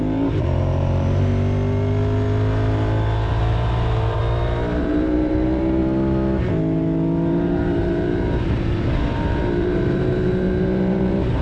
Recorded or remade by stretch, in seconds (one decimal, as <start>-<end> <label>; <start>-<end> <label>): 0.0-1.3 remade; 1.3-3.3 recorded; 3.3-4.2 remade; 4.2-4.8 recorded; 4.8-5.8 remade; 5.8-7.3 recorded; 7.3-11.4 remade